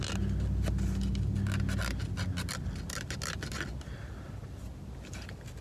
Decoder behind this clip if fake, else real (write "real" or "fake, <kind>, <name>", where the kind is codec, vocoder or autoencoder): real